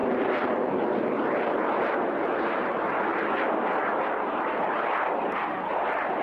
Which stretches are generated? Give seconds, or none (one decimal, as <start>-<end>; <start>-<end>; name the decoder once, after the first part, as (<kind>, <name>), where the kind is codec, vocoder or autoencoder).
0.0-1.8 (vocoder, BigVGAN v2)